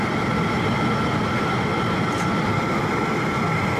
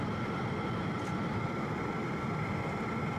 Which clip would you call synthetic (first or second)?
second